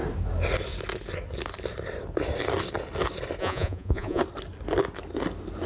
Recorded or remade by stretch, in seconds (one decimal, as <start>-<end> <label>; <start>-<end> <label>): 0.0-3.4 recorded; 3.4-4.2 remade; 4.2-5.7 recorded